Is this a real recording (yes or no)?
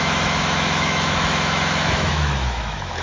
no